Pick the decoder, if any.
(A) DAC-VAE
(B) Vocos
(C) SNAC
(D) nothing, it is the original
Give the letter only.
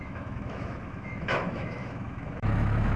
A